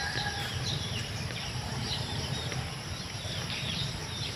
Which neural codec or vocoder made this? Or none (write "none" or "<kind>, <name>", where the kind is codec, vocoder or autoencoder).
vocoder, BigVGAN v2